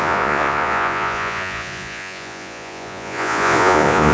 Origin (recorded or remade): remade